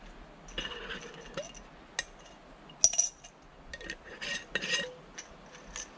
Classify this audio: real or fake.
real